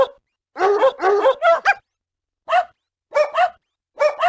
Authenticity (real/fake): real